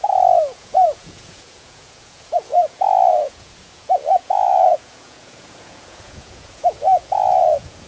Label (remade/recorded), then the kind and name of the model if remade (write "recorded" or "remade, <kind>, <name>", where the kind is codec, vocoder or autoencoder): remade, vocoder, Vocos